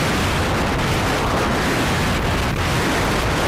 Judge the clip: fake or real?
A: real